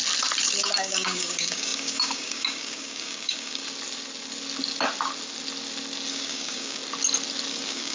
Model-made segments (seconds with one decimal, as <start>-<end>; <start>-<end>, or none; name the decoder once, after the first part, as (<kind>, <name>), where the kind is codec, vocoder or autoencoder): 0.6-3.6 (codec, DAC); 6.1-6.8; 7.5-7.9